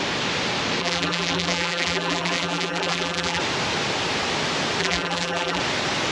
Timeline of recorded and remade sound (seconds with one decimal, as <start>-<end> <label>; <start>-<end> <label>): 0.0-0.8 recorded; 0.8-3.4 remade; 3.4-4.8 recorded; 4.8-5.6 remade; 5.6-6.1 recorded